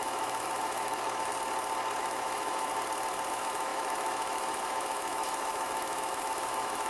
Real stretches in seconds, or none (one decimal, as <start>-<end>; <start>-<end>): 1.3-2.0; 2.7-3.3